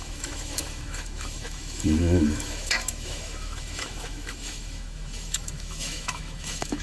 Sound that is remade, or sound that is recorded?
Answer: remade